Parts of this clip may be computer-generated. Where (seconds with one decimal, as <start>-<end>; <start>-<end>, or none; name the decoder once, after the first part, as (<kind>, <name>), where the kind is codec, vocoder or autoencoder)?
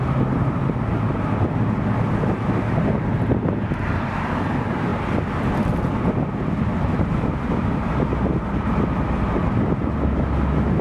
none